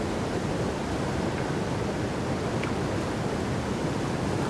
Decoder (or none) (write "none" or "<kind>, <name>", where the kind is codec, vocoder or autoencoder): none